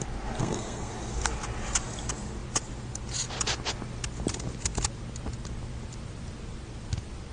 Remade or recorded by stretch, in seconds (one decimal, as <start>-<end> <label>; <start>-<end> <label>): 0.0-0.4 recorded; 0.4-0.9 remade; 0.9-7.3 recorded